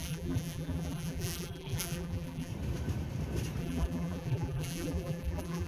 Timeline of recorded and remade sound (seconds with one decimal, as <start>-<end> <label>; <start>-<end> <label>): 0.0-2.5 remade; 2.5-3.6 recorded; 3.6-5.7 remade